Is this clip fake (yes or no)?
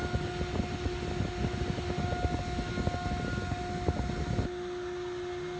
no